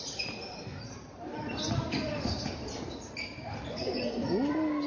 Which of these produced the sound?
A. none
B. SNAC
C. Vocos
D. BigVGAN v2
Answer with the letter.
D